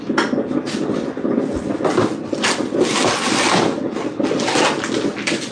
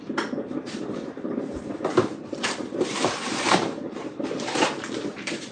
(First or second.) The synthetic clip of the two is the second